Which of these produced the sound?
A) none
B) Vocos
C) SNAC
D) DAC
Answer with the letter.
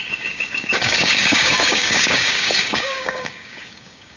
D